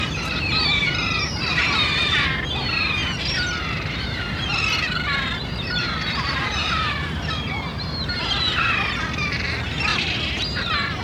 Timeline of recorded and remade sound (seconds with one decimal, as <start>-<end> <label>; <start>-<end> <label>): 0.0-3.0 remade; 3.0-3.6 recorded; 3.6-9.9 remade; 9.9-10.5 recorded; 10.5-11.0 remade

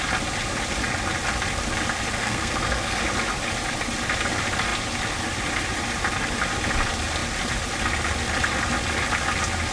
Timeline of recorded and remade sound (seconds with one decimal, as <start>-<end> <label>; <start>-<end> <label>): 0.0-2.2 recorded; 2.2-3.0 remade; 3.0-9.7 recorded